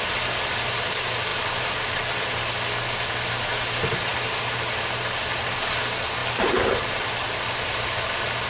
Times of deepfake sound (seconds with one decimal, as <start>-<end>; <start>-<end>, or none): 1.3-2.4; 4.1-5.5; 6.2-7.1